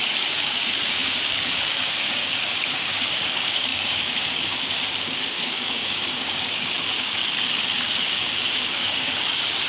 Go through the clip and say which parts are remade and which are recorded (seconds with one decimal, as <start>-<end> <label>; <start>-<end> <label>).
0.0-9.7 remade